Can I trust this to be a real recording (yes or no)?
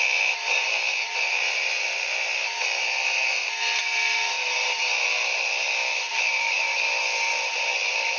no